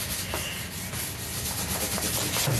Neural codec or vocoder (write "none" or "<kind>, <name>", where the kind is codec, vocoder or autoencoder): none